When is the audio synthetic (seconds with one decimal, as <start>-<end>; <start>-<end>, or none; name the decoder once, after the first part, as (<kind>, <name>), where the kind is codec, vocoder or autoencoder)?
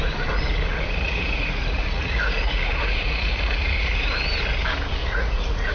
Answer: 0.7-4.1 (vocoder, Vocos); 5.0-5.7